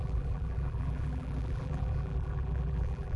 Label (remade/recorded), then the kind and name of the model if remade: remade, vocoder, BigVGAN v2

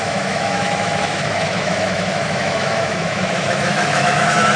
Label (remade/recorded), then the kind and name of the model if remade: remade, autoencoder, DAC-VAE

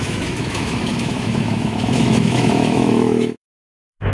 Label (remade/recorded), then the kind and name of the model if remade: remade, autoencoder, DAC-VAE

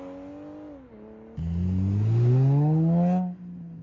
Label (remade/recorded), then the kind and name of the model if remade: recorded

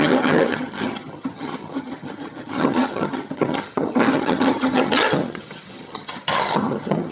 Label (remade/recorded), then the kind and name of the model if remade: remade, vocoder, HiFi-GAN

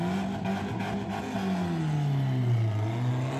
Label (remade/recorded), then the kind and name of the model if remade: recorded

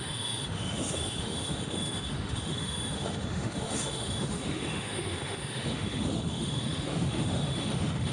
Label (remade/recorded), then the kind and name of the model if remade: remade, autoencoder, DAC-VAE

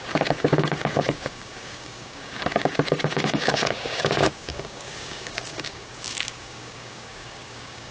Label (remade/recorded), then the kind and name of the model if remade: remade, codec, DAC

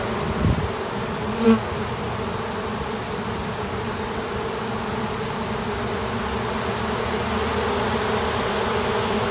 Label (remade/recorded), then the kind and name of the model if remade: recorded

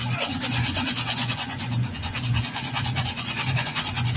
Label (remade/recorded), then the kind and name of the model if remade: remade, vocoder, Vocos